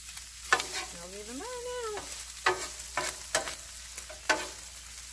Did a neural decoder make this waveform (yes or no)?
no